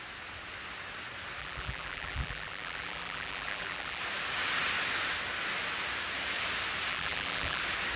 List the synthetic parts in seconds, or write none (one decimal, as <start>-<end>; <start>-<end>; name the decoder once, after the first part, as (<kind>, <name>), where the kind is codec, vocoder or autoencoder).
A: 1.4-4.0 (vocoder, BigVGAN v2); 6.9-7.6